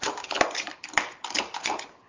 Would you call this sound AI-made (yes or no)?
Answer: no